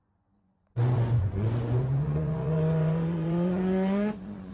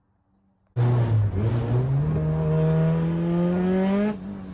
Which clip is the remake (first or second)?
first